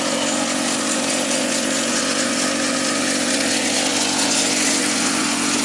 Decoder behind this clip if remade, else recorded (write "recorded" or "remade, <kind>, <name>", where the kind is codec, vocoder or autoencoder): remade, vocoder, Vocos